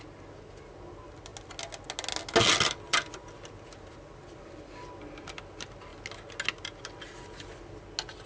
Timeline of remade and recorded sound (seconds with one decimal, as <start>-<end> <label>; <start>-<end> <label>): 0.0-8.3 recorded